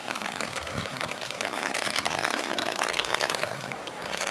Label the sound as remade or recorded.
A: remade